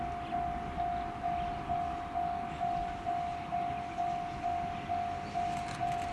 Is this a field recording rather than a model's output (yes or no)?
yes